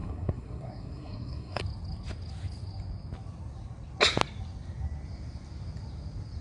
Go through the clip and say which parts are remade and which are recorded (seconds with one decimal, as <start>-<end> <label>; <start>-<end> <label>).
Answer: 0.0-1.6 remade; 1.6-6.4 recorded